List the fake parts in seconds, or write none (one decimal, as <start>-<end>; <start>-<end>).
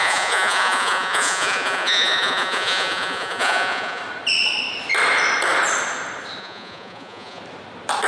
0.0-4.0; 6.4-7.4